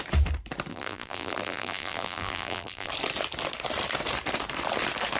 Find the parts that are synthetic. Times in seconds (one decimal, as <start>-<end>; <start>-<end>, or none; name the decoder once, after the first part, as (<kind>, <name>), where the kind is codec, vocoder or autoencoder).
0.7-2.9 (vocoder, BigVGAN v2)